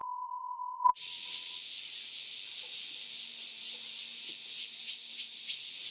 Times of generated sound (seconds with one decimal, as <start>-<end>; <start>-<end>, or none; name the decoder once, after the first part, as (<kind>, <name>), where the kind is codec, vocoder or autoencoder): 0.0-1.6 (vocoder, WaveNeXt)